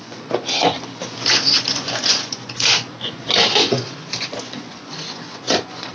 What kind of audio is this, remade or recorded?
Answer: remade